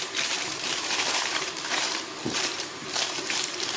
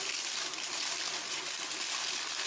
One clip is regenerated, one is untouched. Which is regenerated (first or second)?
first